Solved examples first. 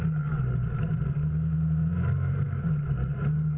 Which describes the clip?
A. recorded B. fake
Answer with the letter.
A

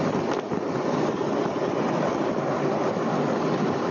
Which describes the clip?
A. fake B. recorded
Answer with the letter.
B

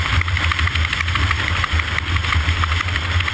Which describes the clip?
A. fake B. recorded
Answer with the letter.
A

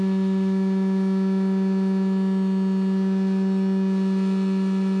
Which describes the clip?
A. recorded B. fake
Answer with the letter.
A